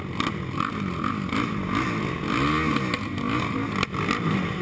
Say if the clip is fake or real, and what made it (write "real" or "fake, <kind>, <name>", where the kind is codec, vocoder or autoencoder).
real